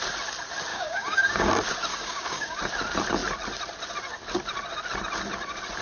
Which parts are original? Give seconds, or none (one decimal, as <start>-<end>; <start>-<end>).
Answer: 0.0-0.7; 1.5-1.9; 2.6-5.8